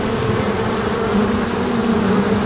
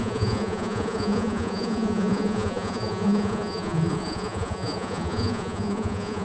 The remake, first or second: second